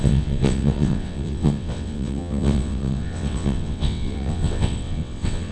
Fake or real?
fake